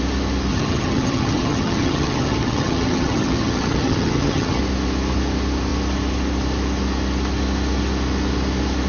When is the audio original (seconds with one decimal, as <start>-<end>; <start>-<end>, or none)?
0.0-0.5; 4.6-8.9